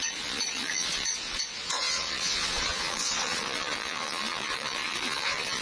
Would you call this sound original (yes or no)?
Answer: no